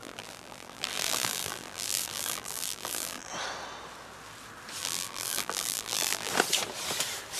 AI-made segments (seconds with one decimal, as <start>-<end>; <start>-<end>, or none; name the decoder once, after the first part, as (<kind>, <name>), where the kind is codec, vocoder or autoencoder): 0.0-3.3 (vocoder, BigVGAN v2); 4.8-6.3